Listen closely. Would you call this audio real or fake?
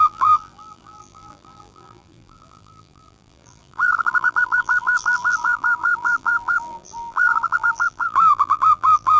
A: fake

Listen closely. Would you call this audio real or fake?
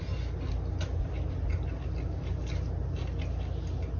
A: real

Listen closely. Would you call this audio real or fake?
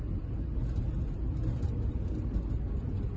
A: real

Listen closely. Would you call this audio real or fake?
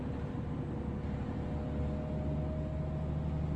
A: real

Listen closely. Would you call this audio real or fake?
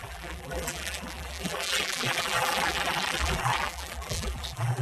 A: fake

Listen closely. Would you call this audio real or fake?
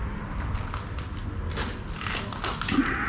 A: real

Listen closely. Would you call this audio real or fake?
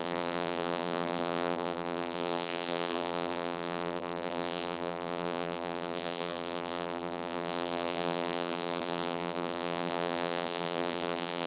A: fake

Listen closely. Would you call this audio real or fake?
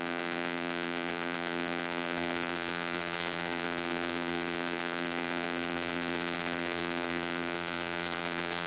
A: fake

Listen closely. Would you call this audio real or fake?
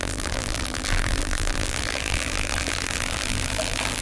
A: fake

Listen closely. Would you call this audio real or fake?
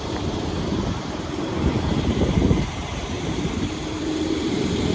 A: fake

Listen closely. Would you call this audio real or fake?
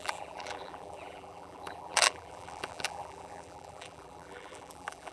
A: fake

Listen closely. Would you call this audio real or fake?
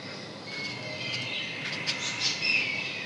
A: real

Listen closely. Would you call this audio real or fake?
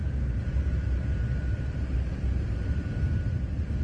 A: fake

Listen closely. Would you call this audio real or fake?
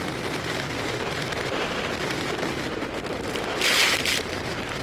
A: fake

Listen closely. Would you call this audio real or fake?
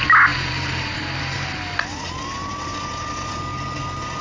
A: real